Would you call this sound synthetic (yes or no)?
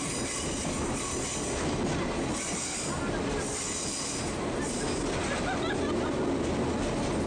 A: no